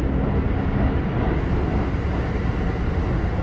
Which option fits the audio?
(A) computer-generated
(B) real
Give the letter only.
B